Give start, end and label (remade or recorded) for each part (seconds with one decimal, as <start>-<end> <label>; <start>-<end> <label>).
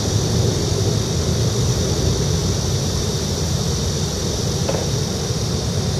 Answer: 0.0-2.7 recorded; 2.7-3.6 remade; 3.6-6.0 recorded